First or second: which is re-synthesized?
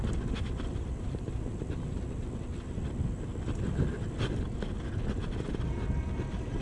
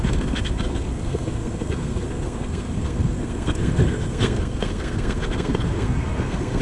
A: second